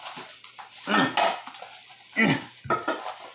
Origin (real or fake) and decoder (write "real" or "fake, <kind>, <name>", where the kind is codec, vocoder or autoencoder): real